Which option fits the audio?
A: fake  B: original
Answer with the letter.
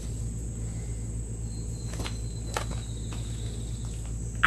B